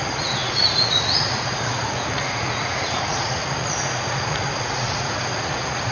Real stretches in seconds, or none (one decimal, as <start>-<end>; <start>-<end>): none